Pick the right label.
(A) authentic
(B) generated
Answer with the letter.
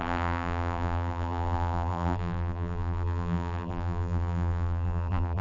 B